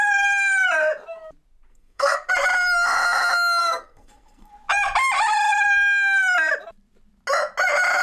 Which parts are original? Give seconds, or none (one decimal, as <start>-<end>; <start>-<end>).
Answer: 0.0-1.7; 2.3-3.6; 4.5-8.0

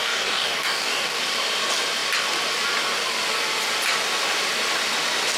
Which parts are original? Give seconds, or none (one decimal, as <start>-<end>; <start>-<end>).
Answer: 1.2-5.4

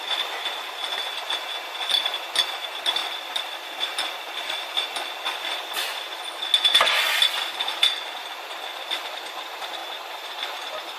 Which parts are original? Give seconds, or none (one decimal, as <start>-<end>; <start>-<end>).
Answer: 0.0-3.0; 5.7-8.7; 9.2-11.0

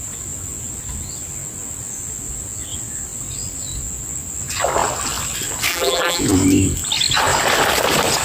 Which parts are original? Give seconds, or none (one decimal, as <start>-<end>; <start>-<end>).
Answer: 0.0-5.7; 6.2-8.2

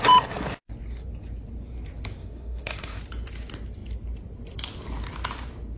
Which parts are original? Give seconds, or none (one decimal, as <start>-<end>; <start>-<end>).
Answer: 0.0-2.2; 3.0-5.8